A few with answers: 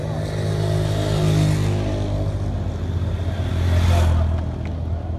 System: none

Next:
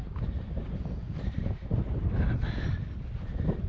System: none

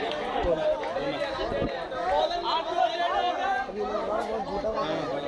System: none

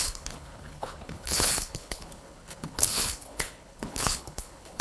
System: codec, HILCodec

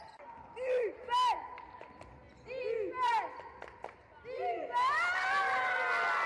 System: none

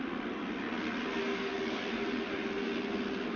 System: none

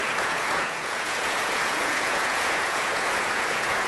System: vocoder, Vocos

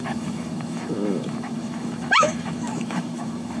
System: autoencoder, DAC-VAE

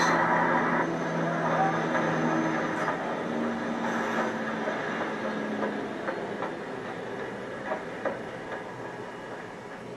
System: none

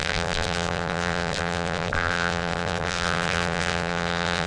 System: vocoder, BigVGAN v2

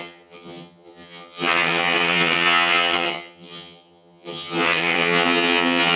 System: vocoder, HiFi-GAN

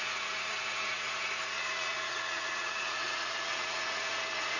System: vocoder, Vocos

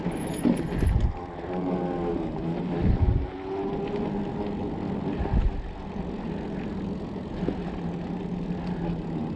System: none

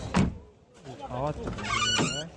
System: none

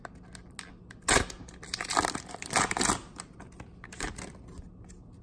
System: none